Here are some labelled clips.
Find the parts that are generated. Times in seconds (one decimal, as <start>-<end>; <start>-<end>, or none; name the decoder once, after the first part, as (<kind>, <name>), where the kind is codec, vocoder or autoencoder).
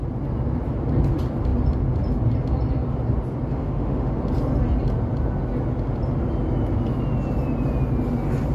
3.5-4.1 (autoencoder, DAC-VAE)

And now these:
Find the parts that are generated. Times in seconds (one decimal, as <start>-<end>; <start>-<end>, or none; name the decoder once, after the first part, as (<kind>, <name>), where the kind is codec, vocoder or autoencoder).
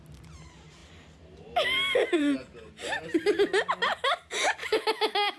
4.6-5.4 (autoencoder, DAC-VAE)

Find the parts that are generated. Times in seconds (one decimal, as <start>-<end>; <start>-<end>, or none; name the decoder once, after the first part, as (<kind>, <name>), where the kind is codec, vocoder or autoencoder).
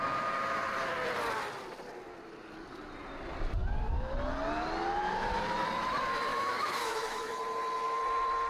6.3-7.4 (autoencoder, DAC-VAE)